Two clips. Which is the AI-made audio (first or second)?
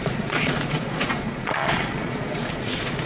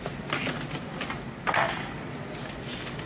first